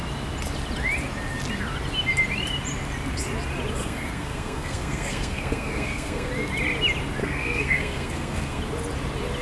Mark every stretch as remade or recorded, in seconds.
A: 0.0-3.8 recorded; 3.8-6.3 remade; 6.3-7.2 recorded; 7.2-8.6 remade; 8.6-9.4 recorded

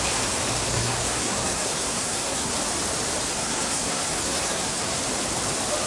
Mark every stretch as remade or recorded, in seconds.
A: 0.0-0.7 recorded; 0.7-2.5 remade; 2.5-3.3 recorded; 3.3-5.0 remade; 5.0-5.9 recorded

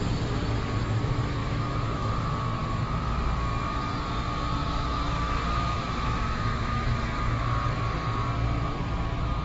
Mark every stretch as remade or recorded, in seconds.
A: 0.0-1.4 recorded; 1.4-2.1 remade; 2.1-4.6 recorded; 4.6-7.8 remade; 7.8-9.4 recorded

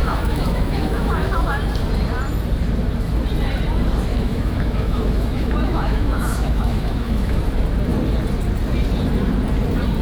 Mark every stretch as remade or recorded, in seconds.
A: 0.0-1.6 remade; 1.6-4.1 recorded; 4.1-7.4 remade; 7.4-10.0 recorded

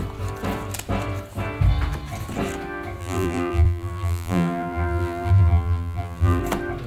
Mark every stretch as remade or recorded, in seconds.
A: 0.0-3.0 recorded; 3.0-6.4 remade; 6.4-6.9 recorded

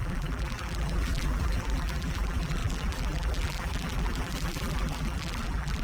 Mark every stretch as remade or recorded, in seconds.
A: 0.0-5.8 remade